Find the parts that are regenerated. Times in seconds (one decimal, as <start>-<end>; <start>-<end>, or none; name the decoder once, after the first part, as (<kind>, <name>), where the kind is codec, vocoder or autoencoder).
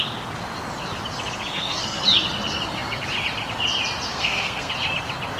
1.5-2.0 (codec, SNAC); 4.1-4.7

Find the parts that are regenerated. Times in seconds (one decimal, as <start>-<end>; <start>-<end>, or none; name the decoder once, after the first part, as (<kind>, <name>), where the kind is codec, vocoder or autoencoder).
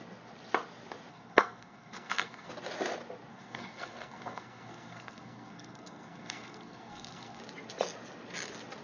1.1-2.5 (codec, SNAC); 3.3-7.4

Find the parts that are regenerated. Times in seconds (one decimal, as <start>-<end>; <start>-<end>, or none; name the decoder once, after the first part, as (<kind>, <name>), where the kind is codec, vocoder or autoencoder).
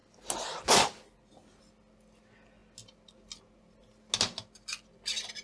none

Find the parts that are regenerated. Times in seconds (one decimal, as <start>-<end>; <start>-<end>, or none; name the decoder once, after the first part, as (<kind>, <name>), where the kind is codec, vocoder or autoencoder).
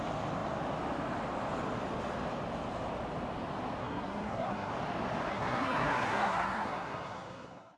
3.8-4.7 (codec, SNAC); 5.3-7.8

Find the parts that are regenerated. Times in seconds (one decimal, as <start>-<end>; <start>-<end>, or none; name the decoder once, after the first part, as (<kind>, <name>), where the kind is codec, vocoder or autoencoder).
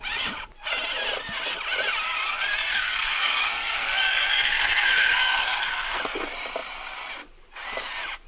2.7-6.0 (codec, SNAC)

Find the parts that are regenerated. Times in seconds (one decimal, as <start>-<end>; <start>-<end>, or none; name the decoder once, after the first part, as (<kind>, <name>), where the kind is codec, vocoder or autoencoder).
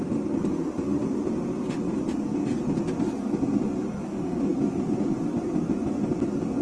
none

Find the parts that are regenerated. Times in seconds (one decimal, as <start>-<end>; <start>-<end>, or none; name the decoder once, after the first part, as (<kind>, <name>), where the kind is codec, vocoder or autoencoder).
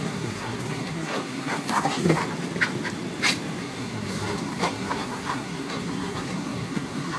0.0-2.2 (codec, SNAC); 3.6-7.2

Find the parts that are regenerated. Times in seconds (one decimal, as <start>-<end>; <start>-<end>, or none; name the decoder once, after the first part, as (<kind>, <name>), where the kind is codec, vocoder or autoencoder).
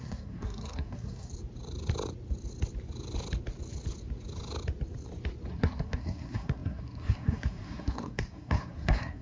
0.0-1.3 (codec, SNAC); 5.5-9.2